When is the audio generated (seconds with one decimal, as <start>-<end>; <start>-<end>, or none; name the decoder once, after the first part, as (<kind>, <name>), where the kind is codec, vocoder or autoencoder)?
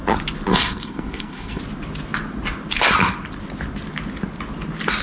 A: 0.5-1.6 (codec, SNAC)